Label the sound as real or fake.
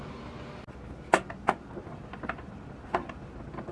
real